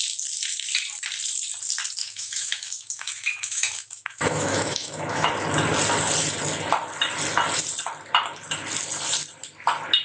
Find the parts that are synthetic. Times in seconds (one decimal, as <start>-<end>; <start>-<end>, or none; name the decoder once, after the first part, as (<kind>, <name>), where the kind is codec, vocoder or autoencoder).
2.0-5.3 (autoencoder, DAC-VAE)